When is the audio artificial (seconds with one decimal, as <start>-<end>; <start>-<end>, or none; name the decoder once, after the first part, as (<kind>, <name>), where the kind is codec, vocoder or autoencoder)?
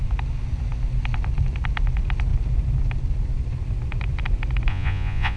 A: 4.7-5.4 (vocoder, Vocos)